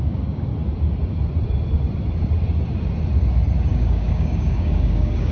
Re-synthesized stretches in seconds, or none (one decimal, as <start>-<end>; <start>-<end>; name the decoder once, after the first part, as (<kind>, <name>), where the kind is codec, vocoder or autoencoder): 0.0-0.5 (codec, DAC); 3.7-5.3